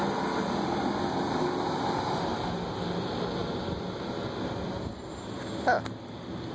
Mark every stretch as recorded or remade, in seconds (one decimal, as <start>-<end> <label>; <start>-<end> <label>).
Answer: 0.0-6.5 recorded

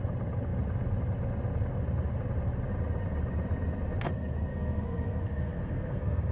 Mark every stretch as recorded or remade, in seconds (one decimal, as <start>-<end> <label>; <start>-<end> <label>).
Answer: 0.0-4.5 recorded; 4.5-6.3 remade

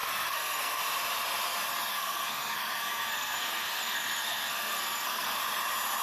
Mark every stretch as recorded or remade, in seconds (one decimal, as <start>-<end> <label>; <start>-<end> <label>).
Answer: 0.0-0.8 remade; 0.8-1.9 recorded; 1.9-5.4 remade; 5.4-6.0 recorded

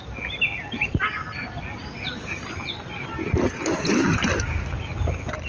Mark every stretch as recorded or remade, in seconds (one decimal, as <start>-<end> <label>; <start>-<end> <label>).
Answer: 0.0-1.8 recorded; 1.8-5.5 remade

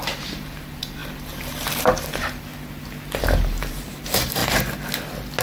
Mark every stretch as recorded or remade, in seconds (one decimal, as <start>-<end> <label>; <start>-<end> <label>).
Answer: 0.0-2.5 remade; 2.5-3.2 recorded; 3.2-4.4 remade; 4.4-5.4 recorded